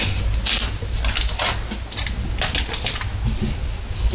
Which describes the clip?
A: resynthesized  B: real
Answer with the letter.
B